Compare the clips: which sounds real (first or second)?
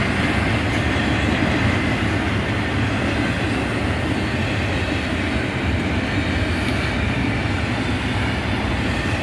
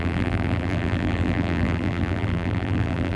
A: first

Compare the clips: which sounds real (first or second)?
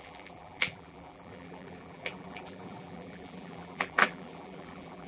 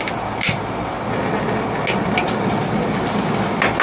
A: second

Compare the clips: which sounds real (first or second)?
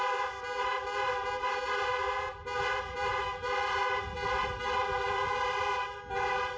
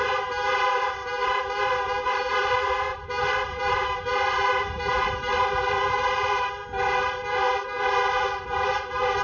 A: first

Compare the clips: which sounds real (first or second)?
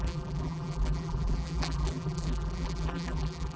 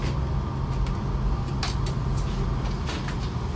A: second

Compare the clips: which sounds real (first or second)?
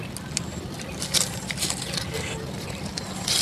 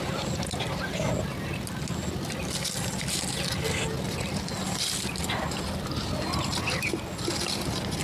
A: second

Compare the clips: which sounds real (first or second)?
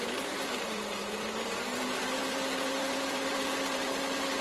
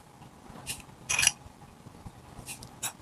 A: second